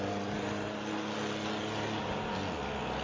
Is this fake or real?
real